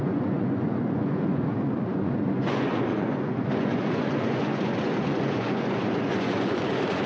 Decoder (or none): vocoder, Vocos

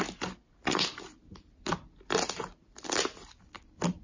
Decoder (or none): none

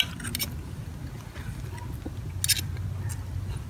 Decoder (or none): none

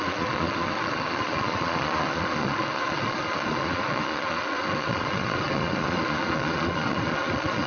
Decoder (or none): vocoder, Vocos